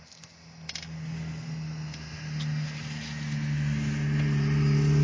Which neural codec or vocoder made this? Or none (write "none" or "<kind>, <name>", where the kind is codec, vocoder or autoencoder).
none